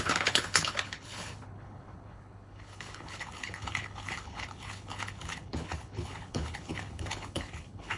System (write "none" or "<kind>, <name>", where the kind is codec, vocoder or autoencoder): codec, HILCodec